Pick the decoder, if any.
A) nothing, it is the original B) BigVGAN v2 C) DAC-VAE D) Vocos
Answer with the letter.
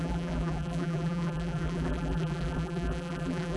B